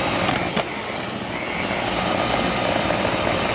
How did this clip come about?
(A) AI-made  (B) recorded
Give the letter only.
B